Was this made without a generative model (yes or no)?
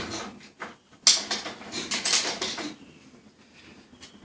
yes